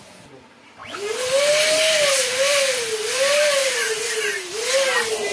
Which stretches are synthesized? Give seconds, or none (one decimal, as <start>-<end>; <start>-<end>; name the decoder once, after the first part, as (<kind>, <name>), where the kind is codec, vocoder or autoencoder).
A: 3.6-4.7 (vocoder, BigVGAN v2)